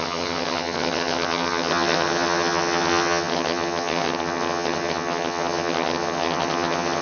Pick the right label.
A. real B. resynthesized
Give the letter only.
B